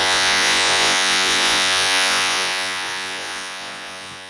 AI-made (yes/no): yes